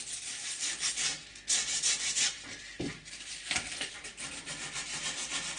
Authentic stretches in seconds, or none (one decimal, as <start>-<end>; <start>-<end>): 0.0-5.6